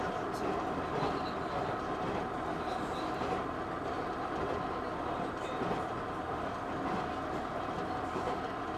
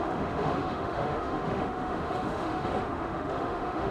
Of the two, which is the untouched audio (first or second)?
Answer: first